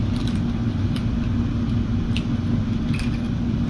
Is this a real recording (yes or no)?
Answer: yes